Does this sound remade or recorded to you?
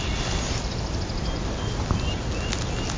recorded